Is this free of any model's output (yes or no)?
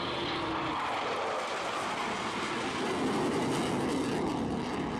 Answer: yes